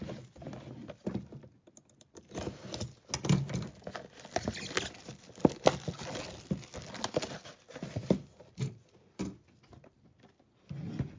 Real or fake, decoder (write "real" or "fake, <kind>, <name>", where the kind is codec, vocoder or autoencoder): real